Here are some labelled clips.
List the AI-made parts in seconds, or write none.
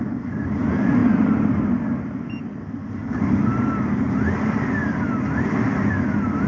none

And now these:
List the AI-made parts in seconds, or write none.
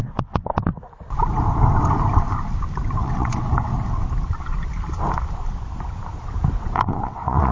0.0-0.7 (vocoder, WaveNeXt); 3.0-3.7; 6.6-7.5